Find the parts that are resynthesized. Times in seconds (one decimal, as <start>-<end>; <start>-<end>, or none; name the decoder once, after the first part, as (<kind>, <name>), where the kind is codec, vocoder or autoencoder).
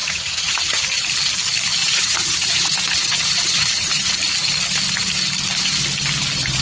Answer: 0.0-0.8 (vocoder, Vocos); 1.8-4.1